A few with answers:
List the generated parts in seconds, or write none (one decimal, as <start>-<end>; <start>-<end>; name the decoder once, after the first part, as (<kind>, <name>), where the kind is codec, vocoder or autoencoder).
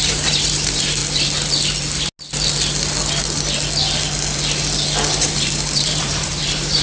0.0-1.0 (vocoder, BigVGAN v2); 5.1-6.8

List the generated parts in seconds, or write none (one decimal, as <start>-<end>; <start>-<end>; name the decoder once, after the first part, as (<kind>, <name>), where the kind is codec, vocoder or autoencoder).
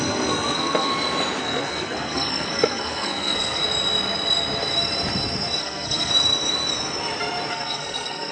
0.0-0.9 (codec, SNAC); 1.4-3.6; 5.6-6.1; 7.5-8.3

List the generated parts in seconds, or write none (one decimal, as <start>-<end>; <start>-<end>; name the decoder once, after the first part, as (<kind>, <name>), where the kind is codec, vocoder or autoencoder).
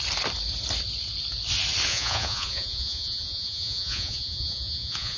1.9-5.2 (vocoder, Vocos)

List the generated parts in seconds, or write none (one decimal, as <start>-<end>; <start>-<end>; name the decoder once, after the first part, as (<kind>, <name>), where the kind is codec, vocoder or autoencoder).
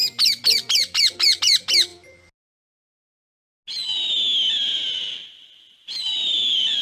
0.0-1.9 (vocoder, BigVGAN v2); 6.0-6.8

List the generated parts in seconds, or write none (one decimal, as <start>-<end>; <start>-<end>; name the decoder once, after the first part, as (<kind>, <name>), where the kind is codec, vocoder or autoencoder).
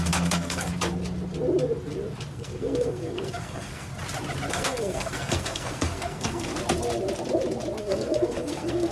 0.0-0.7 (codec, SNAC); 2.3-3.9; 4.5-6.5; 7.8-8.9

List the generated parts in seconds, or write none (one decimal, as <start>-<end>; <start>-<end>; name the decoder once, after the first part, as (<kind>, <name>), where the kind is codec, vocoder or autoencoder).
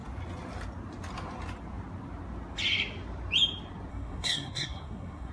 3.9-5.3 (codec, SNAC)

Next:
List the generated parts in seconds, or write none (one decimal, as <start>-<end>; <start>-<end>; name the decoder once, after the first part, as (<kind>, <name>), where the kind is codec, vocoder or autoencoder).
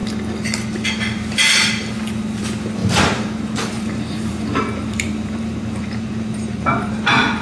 2.8-6.9 (vocoder, BigVGAN v2)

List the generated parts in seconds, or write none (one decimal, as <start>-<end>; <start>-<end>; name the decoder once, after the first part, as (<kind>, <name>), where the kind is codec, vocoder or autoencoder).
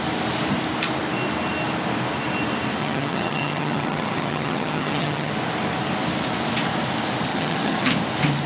2.8-5.3 (vocoder, HiFi-GAN); 7.3-7.9